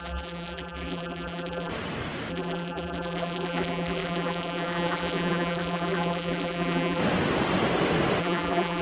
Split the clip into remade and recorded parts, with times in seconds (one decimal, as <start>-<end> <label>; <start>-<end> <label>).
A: 0.0-1.7 remade; 1.7-2.3 recorded; 2.3-7.0 remade; 7.0-8.2 recorded; 8.2-8.8 remade